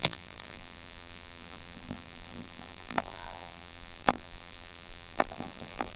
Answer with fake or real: fake